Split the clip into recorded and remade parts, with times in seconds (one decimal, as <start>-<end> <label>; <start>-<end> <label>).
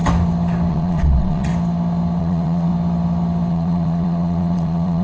0.0-0.7 recorded; 0.7-1.5 remade; 1.5-2.2 recorded; 2.2-2.7 remade; 2.7-3.5 recorded; 3.5-5.0 remade